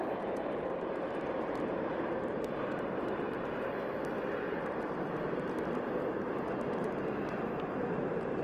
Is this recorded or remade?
remade